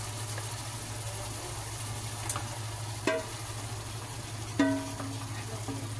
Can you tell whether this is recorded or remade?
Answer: recorded